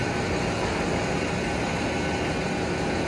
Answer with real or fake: real